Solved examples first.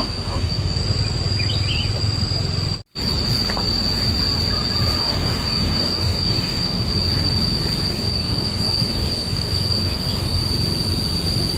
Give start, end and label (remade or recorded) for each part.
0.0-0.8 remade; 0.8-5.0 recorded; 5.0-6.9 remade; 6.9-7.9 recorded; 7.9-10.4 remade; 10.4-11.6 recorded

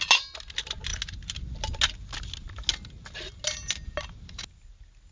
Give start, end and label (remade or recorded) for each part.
0.0-5.1 recorded